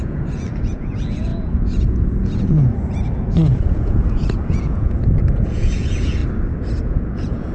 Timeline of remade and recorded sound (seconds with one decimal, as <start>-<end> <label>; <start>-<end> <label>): 0.0-6.2 remade; 6.2-6.8 recorded; 6.8-7.5 remade